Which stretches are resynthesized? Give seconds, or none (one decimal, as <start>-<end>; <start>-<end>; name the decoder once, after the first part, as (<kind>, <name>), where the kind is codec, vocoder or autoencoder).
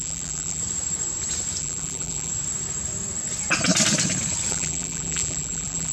0.0-0.6 (vocoder, BigVGAN v2); 1.6-2.3; 4.5-5.9